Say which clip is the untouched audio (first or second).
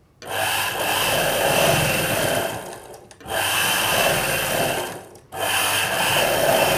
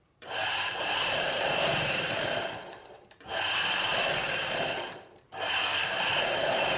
first